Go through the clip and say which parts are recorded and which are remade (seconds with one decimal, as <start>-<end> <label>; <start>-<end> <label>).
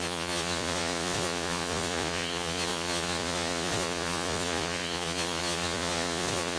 0.0-6.6 remade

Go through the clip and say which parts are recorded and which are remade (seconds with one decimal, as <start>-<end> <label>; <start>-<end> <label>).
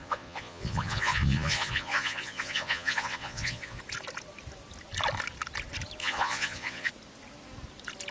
0.0-3.8 remade; 3.8-6.0 recorded; 6.0-6.9 remade; 6.9-8.1 recorded